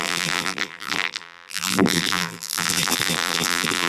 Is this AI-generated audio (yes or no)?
yes